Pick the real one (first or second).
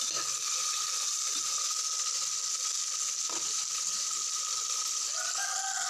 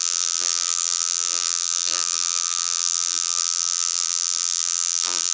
first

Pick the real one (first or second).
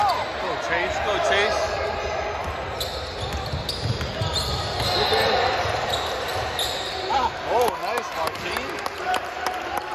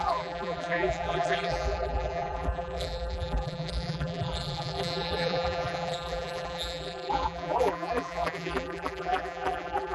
first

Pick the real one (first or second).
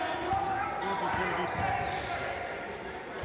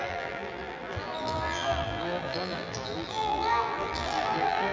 first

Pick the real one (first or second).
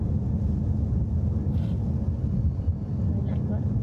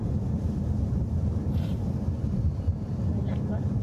first